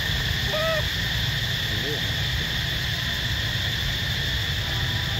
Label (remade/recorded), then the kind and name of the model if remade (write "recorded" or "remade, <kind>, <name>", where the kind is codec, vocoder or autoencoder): recorded